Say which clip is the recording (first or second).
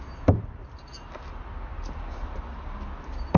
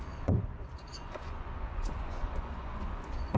first